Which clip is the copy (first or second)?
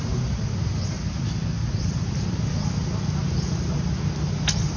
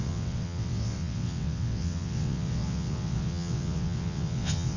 second